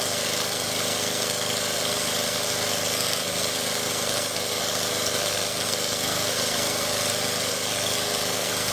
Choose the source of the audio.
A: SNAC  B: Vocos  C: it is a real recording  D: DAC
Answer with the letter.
A